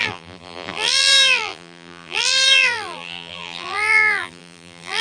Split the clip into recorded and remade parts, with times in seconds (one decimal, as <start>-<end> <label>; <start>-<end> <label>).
0.0-5.0 remade